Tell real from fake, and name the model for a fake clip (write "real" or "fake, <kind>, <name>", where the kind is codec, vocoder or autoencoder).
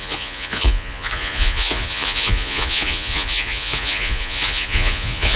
fake, vocoder, Vocos